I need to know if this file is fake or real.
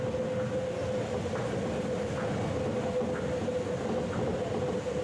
real